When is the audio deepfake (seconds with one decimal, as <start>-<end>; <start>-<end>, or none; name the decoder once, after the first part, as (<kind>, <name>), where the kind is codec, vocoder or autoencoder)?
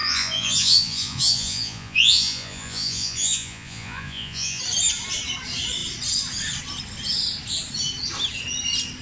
0.0-4.6 (vocoder, Vocos)